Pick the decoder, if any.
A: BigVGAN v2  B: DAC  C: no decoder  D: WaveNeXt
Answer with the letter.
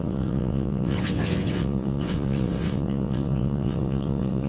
D